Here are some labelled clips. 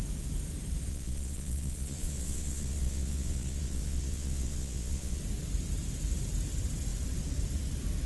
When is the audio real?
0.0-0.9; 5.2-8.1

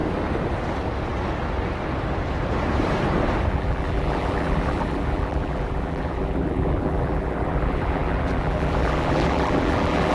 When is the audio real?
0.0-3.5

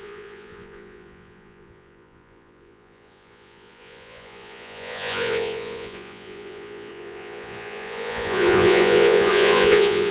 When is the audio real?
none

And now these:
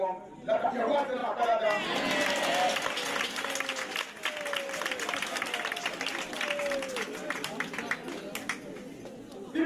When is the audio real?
0.0-9.7

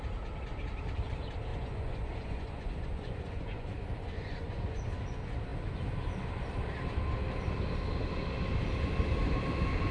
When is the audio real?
0.0-1.5; 4.8-9.9

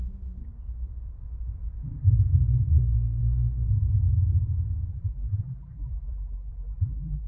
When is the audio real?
0.0-4.9